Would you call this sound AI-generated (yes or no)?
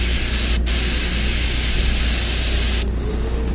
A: yes